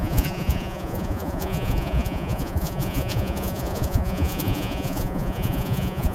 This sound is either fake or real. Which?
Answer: fake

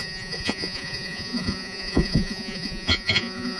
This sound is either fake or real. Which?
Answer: fake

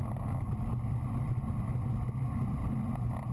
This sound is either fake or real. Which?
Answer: real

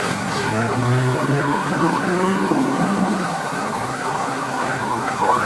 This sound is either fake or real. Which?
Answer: fake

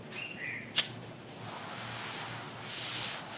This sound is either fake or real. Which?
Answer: real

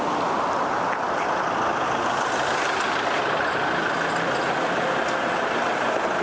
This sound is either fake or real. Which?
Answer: real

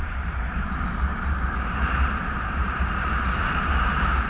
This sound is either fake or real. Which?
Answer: fake